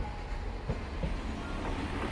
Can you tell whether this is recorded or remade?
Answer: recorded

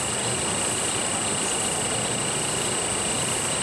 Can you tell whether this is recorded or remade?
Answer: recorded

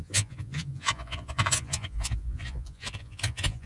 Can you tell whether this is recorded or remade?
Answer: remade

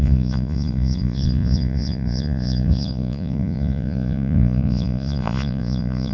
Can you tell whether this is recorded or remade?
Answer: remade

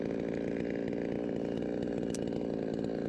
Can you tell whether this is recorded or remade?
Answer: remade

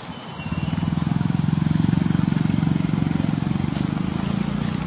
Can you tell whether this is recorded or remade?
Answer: recorded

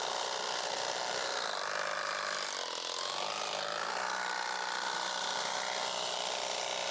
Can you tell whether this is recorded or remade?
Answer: recorded